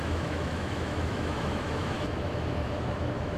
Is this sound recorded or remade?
remade